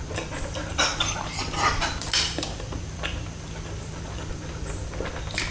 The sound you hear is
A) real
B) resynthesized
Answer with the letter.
B